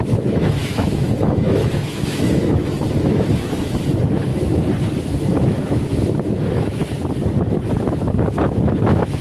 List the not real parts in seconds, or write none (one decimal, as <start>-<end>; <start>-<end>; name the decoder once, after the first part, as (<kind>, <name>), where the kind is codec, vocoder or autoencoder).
0.0-4.3 (autoencoder, DAC-VAE); 5.0-6.8; 7.8-9.2